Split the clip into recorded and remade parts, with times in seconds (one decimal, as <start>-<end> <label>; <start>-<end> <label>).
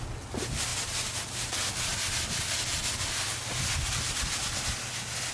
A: 0.0-5.3 recorded